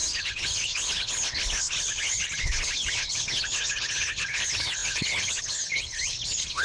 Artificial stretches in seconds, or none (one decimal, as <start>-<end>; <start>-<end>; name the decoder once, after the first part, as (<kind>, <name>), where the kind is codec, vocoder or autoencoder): 0.0-6.6 (codec, HILCodec)